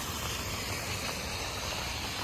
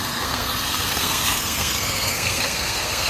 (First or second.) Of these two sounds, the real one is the first